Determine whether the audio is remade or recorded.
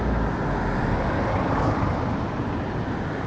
remade